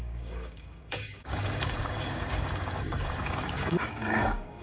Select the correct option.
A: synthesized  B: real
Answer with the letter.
A